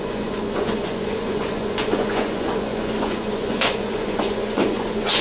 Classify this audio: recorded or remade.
remade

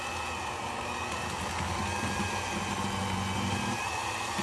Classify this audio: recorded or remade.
recorded